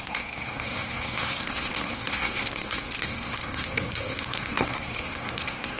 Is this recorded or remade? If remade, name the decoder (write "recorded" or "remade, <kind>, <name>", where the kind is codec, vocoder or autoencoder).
remade, codec, SNAC